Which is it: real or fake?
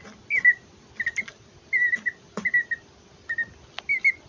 real